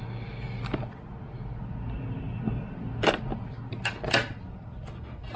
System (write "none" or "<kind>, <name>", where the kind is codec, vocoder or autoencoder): none